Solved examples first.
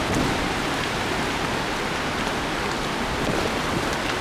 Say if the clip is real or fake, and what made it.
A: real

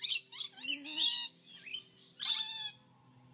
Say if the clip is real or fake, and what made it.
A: real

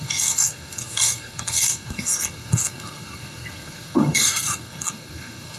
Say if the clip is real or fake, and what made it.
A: fake, codec, SNAC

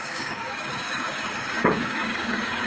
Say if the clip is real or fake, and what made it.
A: fake, codec, DAC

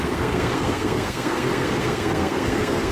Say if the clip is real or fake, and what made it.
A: fake, codec, SNAC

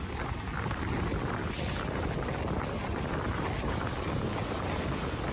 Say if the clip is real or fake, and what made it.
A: real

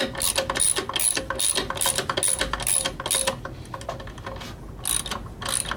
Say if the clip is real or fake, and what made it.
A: real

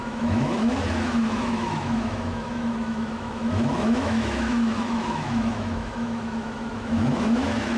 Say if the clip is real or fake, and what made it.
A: fake, autoencoder, DAC-VAE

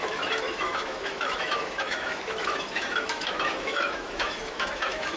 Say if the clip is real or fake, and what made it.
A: fake, autoencoder, DAC-VAE